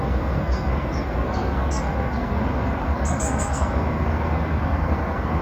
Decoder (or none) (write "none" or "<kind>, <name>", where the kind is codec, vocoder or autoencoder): codec, SNAC